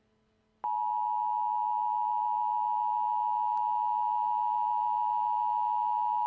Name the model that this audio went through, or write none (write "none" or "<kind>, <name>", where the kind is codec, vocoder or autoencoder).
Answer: none